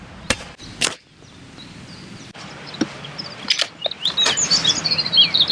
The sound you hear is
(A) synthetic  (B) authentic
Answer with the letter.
B